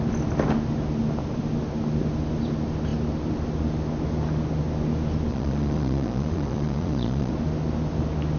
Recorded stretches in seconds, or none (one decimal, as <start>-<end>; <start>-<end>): 0.0-5.3; 7.3-8.4